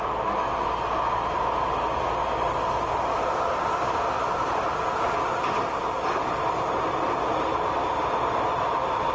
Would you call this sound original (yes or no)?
yes